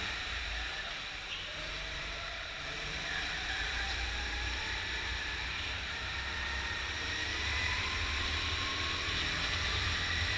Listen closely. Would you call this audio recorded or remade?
remade